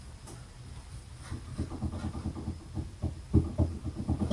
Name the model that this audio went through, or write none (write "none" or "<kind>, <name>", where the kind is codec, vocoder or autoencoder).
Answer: none